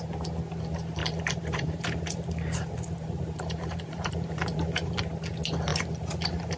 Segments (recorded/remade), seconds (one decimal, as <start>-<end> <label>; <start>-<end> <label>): 0.0-1.0 recorded; 1.0-5.0 remade; 5.0-5.7 recorded; 5.7-6.6 remade